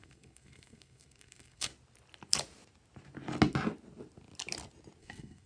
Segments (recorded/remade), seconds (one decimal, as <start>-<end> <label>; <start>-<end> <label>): 0.0-1.7 remade; 1.7-5.0 recorded; 5.0-5.5 remade